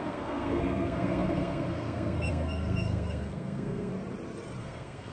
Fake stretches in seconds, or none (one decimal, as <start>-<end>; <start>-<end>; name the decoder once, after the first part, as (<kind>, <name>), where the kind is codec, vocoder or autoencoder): 0.0-3.9 (codec, SNAC); 4.6-5.1